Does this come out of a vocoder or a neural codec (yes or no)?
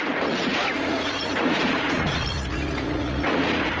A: yes